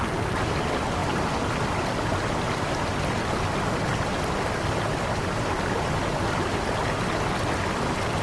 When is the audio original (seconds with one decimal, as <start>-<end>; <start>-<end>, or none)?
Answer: 0.0-8.2